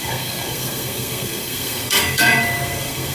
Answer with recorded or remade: remade